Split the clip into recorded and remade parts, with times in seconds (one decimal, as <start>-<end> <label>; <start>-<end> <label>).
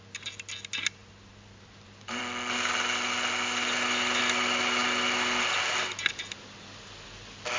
0.0-1.0 recorded; 1.0-2.2 remade; 2.2-7.6 recorded